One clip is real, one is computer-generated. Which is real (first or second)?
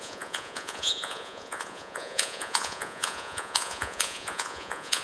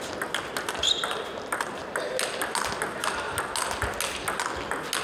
second